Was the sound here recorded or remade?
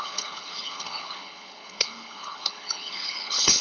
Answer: remade